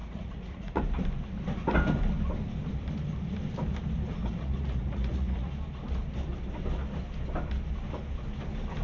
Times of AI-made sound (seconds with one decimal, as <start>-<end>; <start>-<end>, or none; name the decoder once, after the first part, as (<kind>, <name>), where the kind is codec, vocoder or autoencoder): 0.0-0.8 (vocoder, Vocos); 4.2-5.5